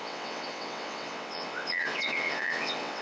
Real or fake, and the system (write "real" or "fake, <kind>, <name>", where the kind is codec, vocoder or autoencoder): fake, vocoder, WaveNeXt